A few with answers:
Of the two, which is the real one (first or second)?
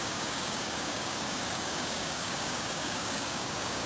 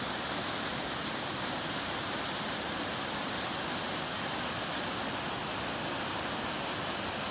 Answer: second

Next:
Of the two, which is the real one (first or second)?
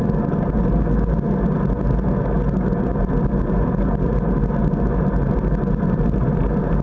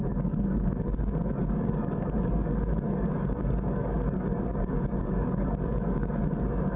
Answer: first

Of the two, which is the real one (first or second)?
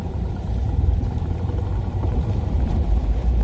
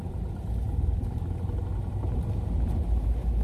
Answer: second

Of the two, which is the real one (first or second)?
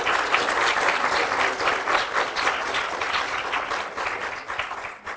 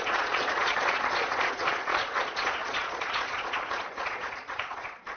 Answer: first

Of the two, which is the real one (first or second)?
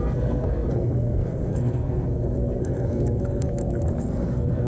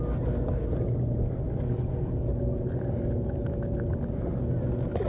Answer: second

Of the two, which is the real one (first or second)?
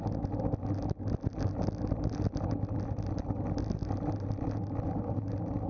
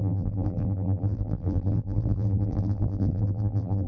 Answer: first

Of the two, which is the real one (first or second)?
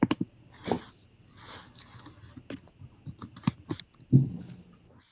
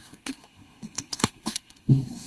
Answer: first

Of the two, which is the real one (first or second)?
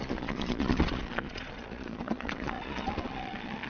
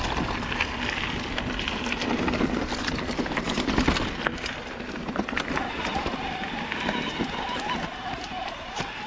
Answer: second